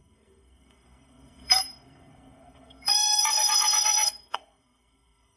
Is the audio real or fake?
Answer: fake